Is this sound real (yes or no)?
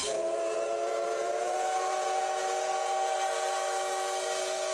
no